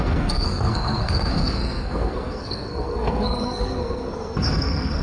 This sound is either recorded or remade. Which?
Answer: remade